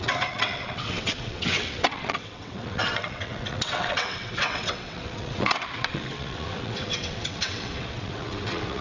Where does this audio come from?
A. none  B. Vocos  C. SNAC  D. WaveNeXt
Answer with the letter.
D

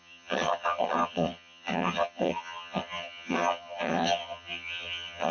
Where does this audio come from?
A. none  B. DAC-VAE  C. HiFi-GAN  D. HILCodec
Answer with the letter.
C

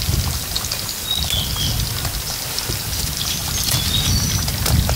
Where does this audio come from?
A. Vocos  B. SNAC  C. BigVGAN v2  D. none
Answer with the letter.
D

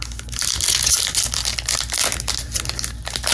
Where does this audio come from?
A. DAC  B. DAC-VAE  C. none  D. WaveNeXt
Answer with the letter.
C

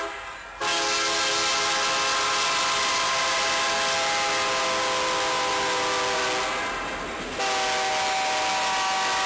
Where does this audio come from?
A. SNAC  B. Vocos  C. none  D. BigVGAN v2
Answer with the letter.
C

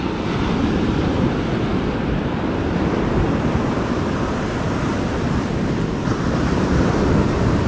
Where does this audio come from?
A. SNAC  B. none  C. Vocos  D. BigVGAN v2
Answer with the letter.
D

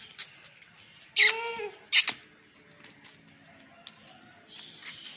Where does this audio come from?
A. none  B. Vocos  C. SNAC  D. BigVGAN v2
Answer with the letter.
A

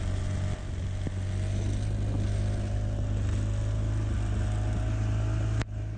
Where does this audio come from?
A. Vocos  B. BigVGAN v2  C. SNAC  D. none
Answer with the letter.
D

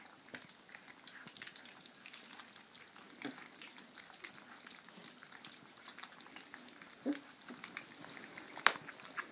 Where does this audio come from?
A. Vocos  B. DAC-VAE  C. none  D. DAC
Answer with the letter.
C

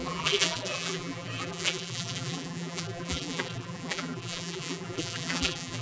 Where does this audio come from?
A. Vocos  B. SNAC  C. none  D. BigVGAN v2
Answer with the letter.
D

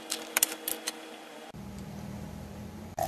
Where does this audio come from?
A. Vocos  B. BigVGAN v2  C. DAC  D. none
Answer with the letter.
B